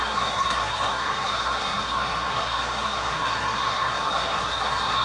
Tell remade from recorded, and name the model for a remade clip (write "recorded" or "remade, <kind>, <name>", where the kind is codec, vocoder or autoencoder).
remade, codec, SNAC